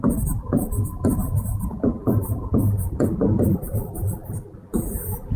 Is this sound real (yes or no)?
no